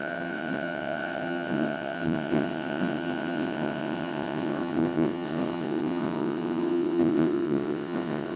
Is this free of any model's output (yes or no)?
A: no